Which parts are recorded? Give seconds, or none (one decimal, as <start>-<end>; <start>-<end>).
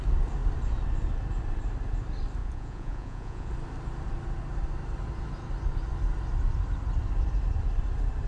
0.0-2.4; 3.5-8.3